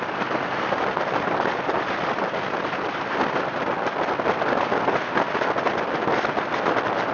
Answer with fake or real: real